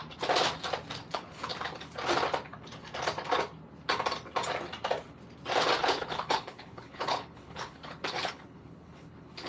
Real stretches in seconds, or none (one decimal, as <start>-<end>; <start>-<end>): 0.0-1.1; 1.5-5.8

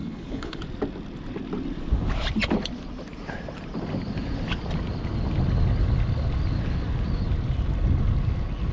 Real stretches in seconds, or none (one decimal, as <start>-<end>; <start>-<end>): 0.6-8.7

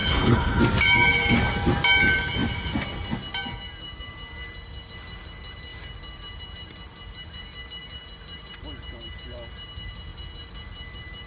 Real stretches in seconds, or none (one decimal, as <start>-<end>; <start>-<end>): 0.6-11.3

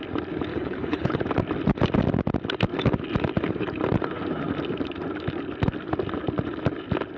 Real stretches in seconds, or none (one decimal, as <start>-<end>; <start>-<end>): 0.0-0.5; 1.2-7.2

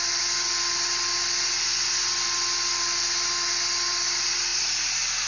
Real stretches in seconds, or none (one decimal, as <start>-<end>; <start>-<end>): 0.0-5.3

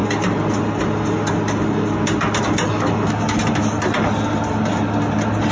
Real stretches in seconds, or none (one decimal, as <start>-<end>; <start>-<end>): 0.0-5.5

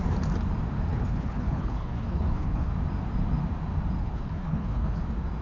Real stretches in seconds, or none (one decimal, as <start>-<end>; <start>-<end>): 0.0-0.9; 2.7-4.0; 5.0-5.4

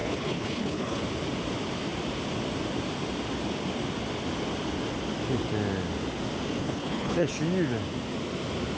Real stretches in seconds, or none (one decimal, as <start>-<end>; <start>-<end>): 1.0-6.6; 7.3-8.8